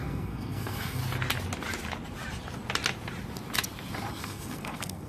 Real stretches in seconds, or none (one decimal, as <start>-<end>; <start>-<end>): 1.0-4.1